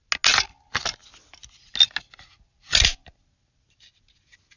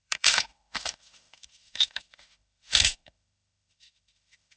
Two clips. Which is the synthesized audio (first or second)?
second